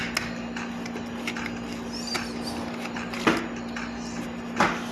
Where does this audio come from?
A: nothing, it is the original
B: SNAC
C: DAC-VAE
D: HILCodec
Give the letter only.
A